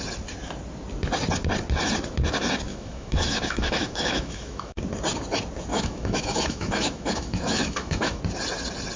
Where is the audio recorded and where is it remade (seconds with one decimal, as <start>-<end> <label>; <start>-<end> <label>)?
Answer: 0.0-2.7 recorded; 2.7-4.8 remade; 4.8-5.7 recorded; 5.7-8.2 remade; 8.2-9.0 recorded